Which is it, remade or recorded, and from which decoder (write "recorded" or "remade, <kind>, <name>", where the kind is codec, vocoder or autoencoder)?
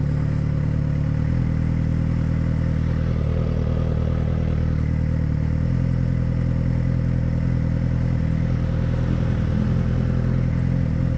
recorded